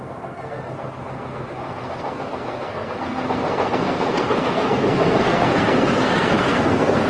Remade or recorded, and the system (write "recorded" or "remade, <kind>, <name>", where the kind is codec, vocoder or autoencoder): remade, codec, SNAC